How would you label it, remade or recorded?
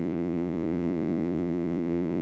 remade